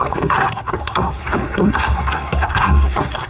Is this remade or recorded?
remade